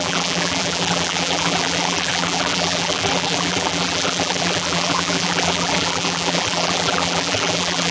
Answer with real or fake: fake